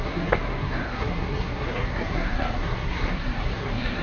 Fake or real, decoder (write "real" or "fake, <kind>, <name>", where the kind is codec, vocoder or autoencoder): fake, codec, SNAC